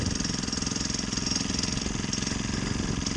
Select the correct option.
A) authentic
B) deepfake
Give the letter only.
A